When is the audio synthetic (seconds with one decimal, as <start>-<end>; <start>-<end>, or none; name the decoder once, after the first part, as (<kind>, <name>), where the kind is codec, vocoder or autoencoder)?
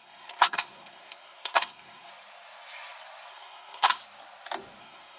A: 0.0-2.1 (codec, SNAC); 3.3-4.0; 4.8-5.2